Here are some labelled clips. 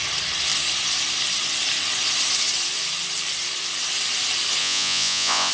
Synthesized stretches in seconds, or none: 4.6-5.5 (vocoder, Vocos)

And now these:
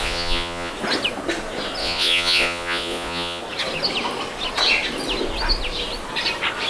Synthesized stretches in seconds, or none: 0.0-0.7 (vocoder, Vocos); 1.8-3.4

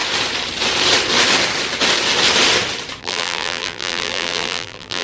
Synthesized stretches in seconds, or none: 3.0-5.0 (vocoder, BigVGAN v2)

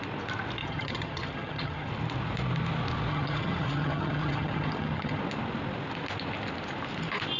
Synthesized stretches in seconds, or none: 0.6-1.9 (vocoder, HiFi-GAN); 3.1-5.2

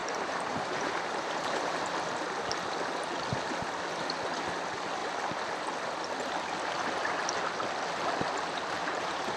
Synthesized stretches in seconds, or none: 0.0-1.8 (vocoder, BigVGAN v2); 8.8-9.4

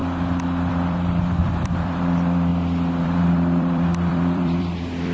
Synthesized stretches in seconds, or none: 0.7-2.5 (vocoder, BigVGAN v2); 3.0-5.1